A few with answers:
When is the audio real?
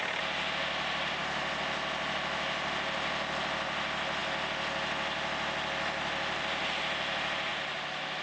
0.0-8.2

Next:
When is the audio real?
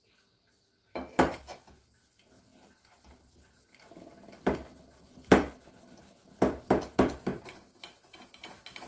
0.0-8.9